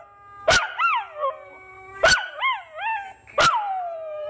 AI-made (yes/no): no